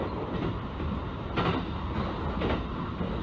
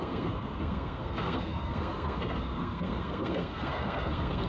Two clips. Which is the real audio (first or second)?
first